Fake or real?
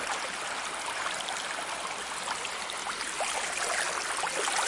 real